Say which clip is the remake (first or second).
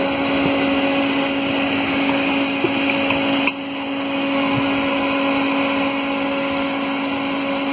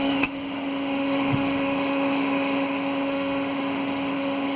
second